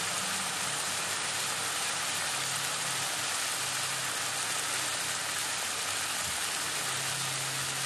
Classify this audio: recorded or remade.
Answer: recorded